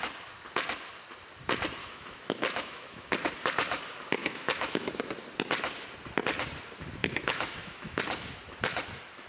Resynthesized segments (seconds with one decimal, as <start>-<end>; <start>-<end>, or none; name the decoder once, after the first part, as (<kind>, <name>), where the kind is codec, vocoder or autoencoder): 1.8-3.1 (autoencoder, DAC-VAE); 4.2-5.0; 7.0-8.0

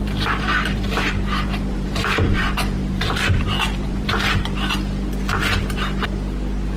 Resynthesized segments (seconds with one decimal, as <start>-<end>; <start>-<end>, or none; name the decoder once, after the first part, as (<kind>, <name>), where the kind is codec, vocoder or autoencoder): 0.0-4.1 (vocoder, BigVGAN v2)

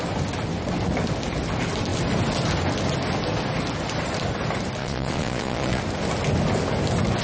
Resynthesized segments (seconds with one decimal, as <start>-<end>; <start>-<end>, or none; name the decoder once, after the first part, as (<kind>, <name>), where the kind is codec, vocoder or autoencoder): 4.8-5.8 (vocoder, Vocos)

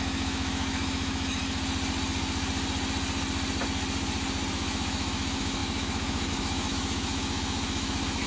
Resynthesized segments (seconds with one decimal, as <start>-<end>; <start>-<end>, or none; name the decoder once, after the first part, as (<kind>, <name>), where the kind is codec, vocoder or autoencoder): 0.0-1.4 (autoencoder, DAC-VAE); 4.5-8.3

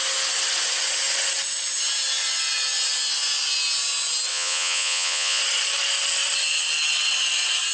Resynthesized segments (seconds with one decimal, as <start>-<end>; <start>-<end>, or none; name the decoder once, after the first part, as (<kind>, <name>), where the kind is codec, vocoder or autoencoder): 4.3-5.4 (vocoder, Vocos)

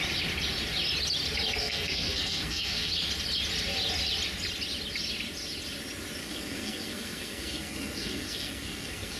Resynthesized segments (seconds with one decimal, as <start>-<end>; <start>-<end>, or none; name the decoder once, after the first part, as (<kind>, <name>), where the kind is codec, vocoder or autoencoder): 1.6-2.9 (codec, SNAC); 6.2-9.2

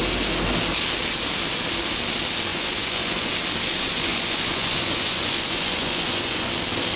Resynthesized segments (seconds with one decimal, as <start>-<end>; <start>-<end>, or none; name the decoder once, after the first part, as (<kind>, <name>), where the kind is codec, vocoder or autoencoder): 2.5-3.3 (vocoder, Vocos); 3.7-6.5

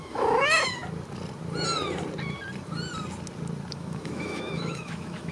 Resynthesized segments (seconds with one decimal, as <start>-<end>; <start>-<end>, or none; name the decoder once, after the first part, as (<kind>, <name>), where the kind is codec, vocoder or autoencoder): 0.0-0.8 (autoencoder, DAC-VAE); 3.7-5.3